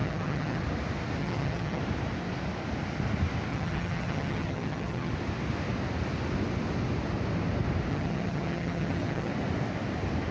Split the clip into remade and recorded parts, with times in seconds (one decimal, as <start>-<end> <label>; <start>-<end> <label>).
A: 0.0-0.6 remade; 0.6-1.2 recorded; 1.2-1.8 remade; 1.8-3.5 recorded; 3.5-5.1 remade; 5.1-7.9 recorded; 7.9-9.3 remade; 9.3-10.3 recorded